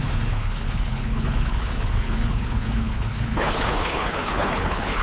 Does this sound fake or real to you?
fake